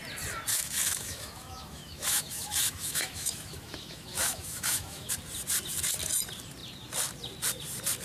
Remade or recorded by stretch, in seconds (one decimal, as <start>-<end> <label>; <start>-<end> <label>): 0.0-0.5 recorded; 0.5-5.1 remade; 5.1-8.0 recorded